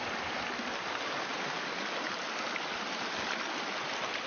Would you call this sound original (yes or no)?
yes